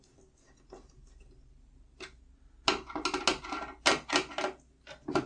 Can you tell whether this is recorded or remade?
recorded